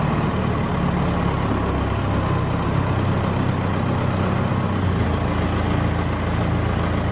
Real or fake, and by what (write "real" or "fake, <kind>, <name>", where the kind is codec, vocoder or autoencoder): real